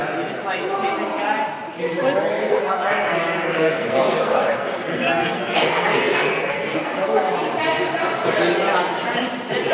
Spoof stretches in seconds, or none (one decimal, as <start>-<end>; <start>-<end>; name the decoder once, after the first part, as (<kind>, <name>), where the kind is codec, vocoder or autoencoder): 2.4-7.3 (codec, SNAC)